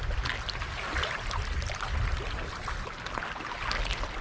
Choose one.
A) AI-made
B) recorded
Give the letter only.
B